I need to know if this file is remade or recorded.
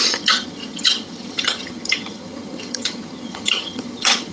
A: remade